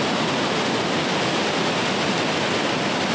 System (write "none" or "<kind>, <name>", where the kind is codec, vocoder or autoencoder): none